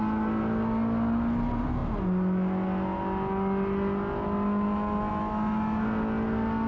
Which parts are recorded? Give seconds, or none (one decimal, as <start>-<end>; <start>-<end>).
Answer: 0.0-6.7